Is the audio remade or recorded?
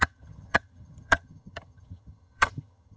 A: remade